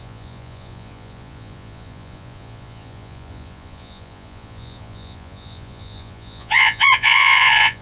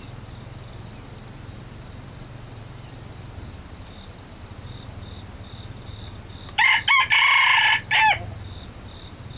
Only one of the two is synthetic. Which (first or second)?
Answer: first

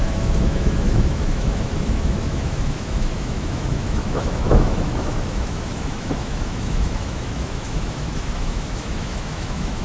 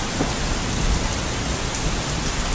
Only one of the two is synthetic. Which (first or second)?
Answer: first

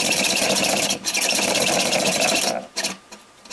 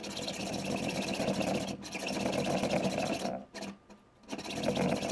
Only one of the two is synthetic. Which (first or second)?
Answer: first